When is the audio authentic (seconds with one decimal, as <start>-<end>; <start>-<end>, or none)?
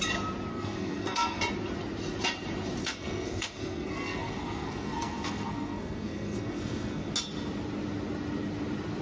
0.0-0.5; 1.4-2.8; 7.1-9.0